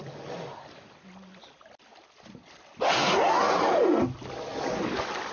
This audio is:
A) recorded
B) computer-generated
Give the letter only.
A